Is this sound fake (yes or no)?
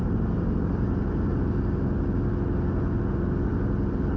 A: no